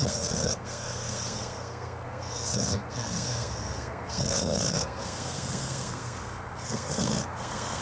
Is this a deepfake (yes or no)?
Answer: yes